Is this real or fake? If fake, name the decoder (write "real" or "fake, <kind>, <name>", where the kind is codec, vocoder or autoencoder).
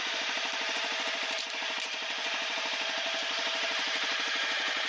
fake, vocoder, BigVGAN v2